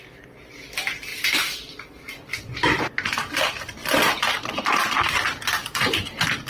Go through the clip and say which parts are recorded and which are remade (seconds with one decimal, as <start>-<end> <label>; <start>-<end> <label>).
0.0-3.8 recorded; 3.8-4.7 remade; 4.7-5.6 recorded; 5.6-6.5 remade